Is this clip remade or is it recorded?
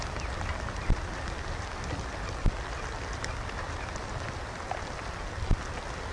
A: recorded